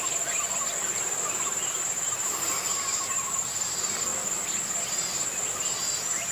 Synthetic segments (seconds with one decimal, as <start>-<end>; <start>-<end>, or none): none